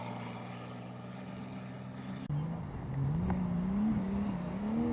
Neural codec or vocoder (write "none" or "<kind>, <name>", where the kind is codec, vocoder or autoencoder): none